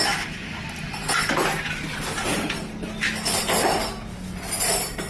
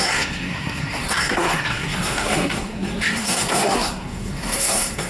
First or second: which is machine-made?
second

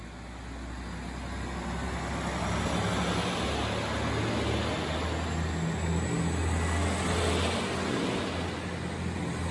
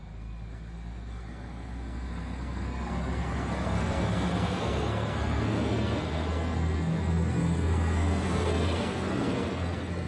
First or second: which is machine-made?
second